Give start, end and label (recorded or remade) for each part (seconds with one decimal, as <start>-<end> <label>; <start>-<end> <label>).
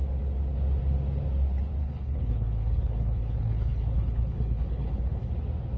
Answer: 0.0-1.8 recorded; 1.8-5.3 remade; 5.3-5.8 recorded